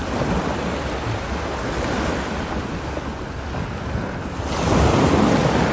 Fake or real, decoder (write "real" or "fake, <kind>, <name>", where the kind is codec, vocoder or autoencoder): real